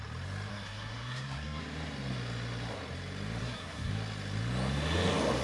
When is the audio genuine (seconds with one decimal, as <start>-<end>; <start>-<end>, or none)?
0.0-0.5; 1.6-3.4; 3.9-5.4